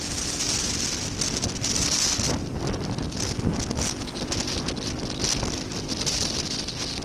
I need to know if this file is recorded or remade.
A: recorded